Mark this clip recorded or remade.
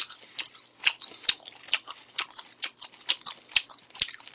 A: recorded